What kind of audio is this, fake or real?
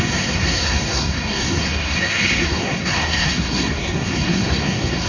fake